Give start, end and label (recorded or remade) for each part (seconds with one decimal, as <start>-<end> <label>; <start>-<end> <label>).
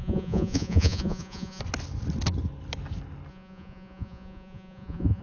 0.0-1.6 remade; 1.6-3.3 recorded; 3.3-5.2 remade